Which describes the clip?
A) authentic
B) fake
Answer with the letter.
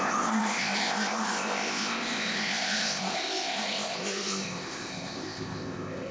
B